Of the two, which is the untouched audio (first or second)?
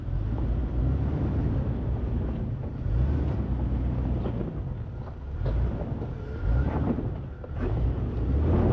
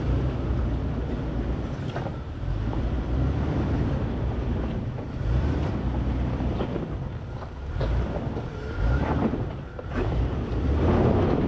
first